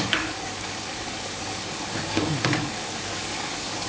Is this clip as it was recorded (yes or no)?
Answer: no